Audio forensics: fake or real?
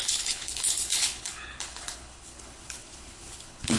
fake